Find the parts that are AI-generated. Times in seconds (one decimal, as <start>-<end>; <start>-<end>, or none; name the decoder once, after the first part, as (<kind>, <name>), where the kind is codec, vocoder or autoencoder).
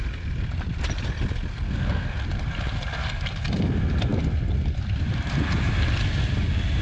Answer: 1.5-2.2 (codec, SNAC)